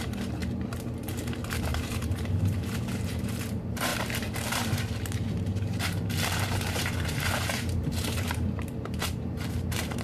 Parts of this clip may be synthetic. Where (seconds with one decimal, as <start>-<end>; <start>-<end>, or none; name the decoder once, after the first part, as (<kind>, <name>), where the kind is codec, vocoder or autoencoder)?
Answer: 0.0-0.4 (vocoder, BigVGAN v2); 1.0-10.0